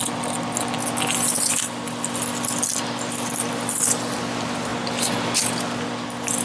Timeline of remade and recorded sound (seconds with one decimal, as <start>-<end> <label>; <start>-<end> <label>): 0.0-6.4 recorded